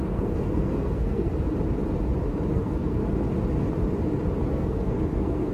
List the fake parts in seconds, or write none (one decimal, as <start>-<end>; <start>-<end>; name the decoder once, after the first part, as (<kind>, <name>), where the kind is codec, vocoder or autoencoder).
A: 0.0-1.3 (codec, SNAC); 2.5-3.0; 4.5-5.5